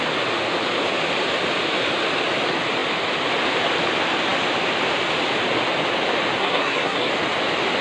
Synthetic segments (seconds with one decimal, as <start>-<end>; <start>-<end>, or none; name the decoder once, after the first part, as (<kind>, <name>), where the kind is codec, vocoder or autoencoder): 6.4-7.1 (codec, SNAC)